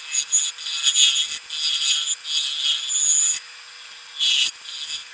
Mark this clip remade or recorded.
recorded